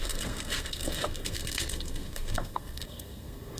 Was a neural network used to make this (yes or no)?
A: yes